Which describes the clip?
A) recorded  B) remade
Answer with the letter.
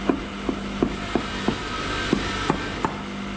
A